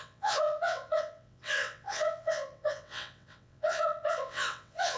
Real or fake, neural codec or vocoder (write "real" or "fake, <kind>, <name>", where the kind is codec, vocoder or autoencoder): fake, vocoder, WaveNeXt